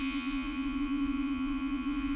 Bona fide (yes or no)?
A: no